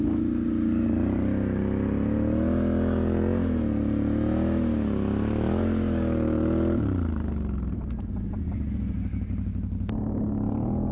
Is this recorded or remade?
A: recorded